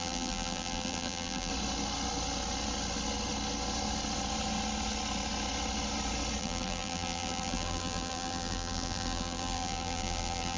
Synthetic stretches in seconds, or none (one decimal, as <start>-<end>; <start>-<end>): 0.0-1.5; 6.4-10.6